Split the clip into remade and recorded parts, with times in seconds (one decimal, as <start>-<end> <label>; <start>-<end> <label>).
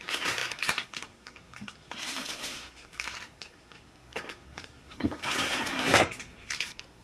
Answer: 0.0-7.0 remade